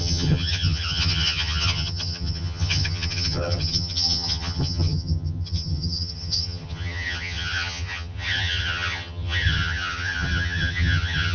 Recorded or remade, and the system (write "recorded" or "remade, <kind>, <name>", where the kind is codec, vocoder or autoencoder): remade, vocoder, HiFi-GAN